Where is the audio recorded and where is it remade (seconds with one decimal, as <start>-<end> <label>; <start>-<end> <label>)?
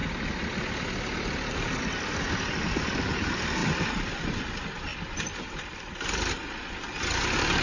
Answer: 0.0-3.6 recorded; 3.6-4.4 remade; 4.4-4.9 recorded; 4.9-6.3 remade; 6.3-7.6 recorded